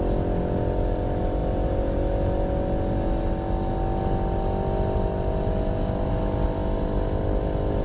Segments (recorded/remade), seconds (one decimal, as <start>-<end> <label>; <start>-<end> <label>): 0.0-7.8 recorded